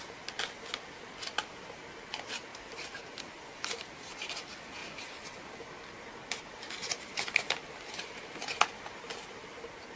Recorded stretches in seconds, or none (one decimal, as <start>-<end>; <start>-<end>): 0.0-2.5; 3.2-10.0